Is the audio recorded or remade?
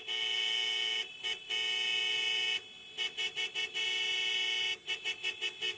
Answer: recorded